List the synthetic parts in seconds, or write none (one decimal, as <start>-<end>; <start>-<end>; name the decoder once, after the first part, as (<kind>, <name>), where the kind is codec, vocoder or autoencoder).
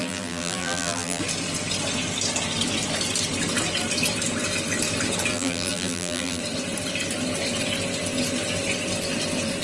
0.0-1.2 (vocoder, BigVGAN v2); 5.3-6.4